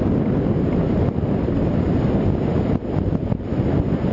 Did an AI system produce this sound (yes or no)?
no